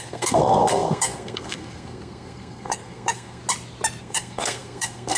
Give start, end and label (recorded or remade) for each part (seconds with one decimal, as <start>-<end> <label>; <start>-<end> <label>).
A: 0.0-3.4 remade; 3.4-4.0 recorded; 4.0-5.2 remade

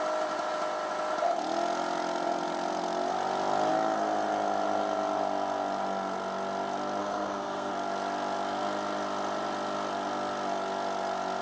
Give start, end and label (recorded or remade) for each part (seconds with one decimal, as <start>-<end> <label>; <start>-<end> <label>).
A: 0.0-7.0 recorded; 7.0-7.7 remade; 7.7-11.4 recorded

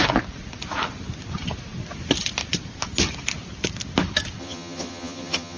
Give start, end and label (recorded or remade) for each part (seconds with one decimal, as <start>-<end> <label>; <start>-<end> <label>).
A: 0.0-4.4 recorded; 4.4-5.6 remade

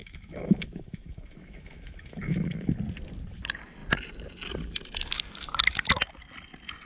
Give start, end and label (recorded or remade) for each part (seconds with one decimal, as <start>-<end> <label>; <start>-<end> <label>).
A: 0.0-2.7 remade; 2.7-6.8 recorded

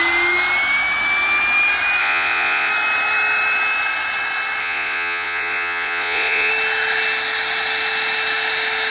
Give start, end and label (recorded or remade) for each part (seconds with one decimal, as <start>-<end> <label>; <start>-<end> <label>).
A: 0.0-2.0 recorded; 2.0-2.7 remade; 2.7-4.6 recorded; 4.6-6.5 remade; 6.5-8.9 recorded

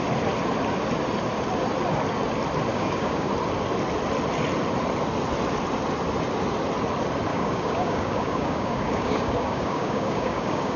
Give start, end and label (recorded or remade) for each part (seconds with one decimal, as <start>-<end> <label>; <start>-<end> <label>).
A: 0.0-2.7 recorded; 2.7-3.3 remade; 3.3-7.3 recorded; 7.3-10.8 remade